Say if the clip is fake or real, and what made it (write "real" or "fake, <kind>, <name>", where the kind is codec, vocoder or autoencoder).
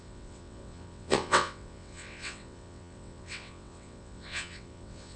fake, vocoder, WaveNeXt